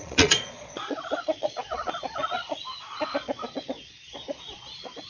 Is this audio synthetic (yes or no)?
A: yes